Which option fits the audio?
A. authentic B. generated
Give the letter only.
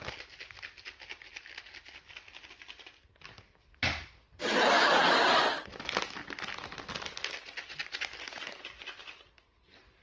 A